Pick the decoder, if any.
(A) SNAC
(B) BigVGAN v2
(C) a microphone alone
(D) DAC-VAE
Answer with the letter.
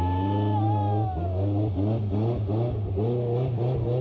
C